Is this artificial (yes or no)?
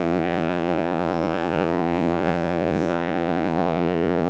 yes